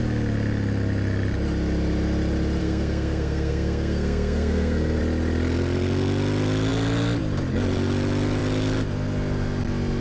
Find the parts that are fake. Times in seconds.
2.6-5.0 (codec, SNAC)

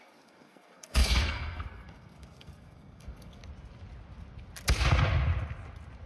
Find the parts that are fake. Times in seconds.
0.0-3.4 (codec, SNAC)

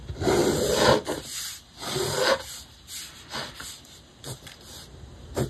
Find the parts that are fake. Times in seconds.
none